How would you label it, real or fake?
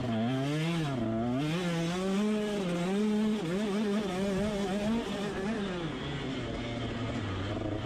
real